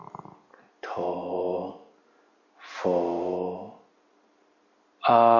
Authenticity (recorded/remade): recorded